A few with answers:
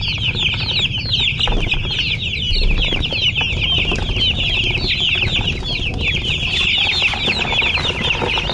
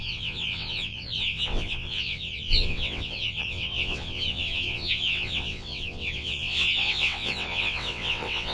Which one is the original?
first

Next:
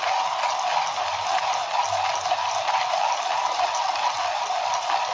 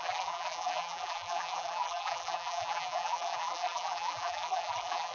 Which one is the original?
first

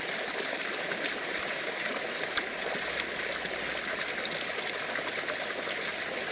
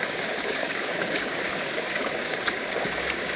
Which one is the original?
first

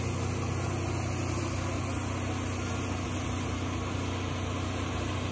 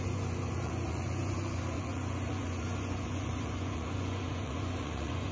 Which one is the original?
first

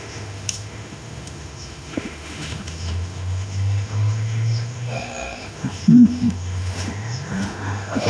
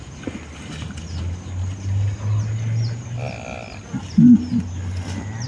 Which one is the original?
second